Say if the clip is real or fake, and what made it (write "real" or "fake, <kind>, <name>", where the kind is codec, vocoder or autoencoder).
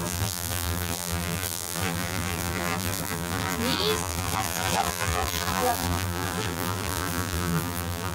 fake, vocoder, BigVGAN v2